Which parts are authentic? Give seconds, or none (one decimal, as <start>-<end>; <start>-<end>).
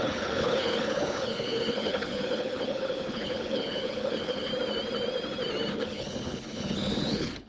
4.5-5.8